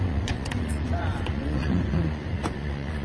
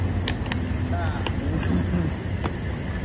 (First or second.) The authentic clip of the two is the second